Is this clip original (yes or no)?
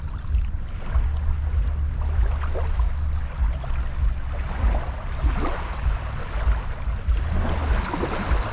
yes